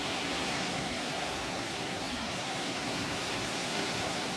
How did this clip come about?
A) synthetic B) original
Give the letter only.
A